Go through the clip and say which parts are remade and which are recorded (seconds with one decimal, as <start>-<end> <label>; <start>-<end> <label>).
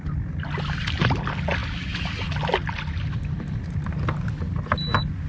0.0-5.3 recorded